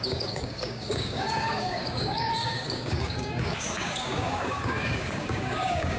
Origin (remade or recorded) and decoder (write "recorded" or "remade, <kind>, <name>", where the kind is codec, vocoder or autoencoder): remade, codec, DAC